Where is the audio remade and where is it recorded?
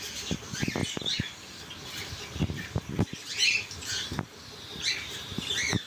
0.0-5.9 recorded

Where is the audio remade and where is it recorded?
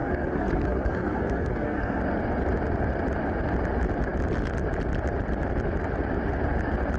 0.0-2.0 remade; 2.0-7.0 recorded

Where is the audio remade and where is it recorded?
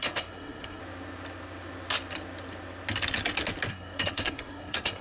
0.0-0.8 remade; 0.8-3.7 recorded; 3.7-5.0 remade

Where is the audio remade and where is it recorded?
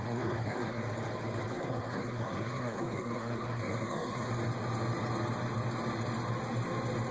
0.0-0.8 remade; 0.8-1.5 recorded; 1.5-4.3 remade; 4.3-7.1 recorded